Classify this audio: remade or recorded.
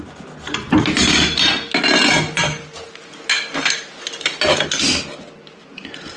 recorded